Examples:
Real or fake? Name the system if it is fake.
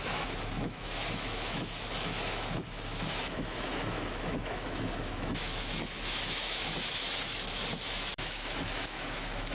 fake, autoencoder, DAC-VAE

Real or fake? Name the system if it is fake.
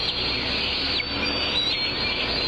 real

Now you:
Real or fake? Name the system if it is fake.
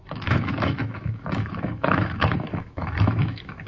fake, autoencoder, DAC-VAE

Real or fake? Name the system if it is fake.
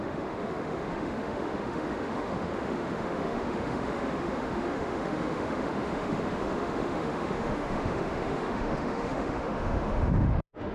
fake, autoencoder, DAC-VAE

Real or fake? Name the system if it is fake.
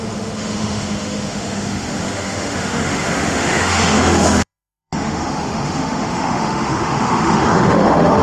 fake, autoencoder, DAC-VAE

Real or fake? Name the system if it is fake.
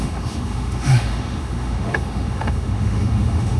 fake, autoencoder, DAC-VAE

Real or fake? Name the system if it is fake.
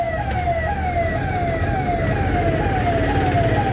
real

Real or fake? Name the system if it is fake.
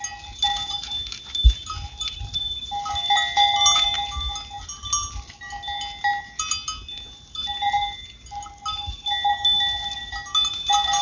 real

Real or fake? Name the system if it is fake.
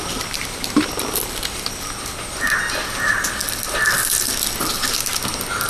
real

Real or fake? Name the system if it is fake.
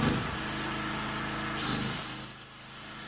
real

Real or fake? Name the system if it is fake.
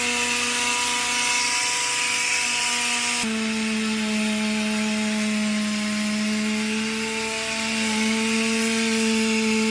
real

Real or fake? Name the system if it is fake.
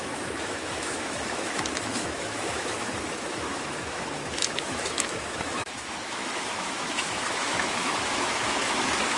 fake, autoencoder, DAC-VAE